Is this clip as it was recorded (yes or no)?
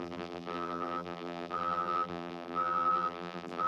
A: no